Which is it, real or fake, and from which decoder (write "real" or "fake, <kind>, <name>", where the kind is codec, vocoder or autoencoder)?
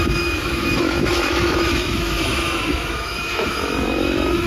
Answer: fake, autoencoder, DAC-VAE